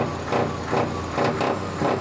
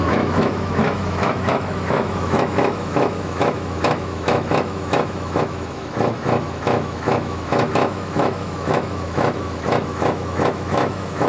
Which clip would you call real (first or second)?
first